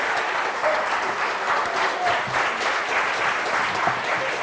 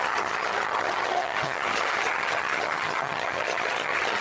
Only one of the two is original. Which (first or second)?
first